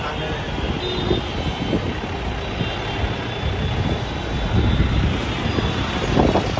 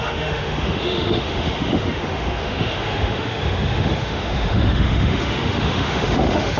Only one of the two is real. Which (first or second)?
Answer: first